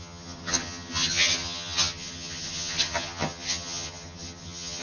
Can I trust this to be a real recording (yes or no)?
no